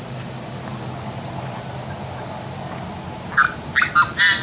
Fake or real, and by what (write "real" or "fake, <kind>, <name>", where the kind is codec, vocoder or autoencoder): real